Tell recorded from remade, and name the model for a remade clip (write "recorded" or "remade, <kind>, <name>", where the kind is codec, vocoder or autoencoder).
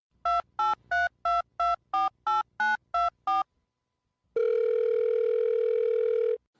recorded